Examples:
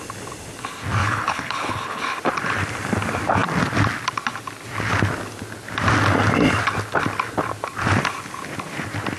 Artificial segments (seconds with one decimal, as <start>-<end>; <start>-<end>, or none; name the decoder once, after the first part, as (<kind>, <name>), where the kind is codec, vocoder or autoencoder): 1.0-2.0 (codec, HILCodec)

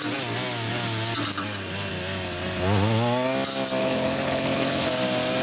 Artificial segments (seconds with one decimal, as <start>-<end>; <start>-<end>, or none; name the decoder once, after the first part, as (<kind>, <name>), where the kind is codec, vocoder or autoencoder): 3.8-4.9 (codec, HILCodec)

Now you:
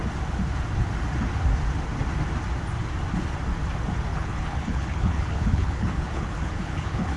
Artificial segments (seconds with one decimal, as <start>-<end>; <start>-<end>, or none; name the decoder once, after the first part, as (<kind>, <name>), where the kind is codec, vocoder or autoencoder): 4.1-7.2 (codec, HILCodec)